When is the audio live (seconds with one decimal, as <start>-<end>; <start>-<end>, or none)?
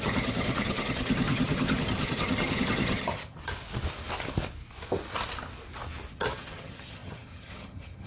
3.4-6.1